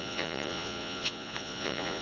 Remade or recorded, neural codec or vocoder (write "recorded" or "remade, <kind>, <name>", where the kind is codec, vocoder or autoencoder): remade, vocoder, Vocos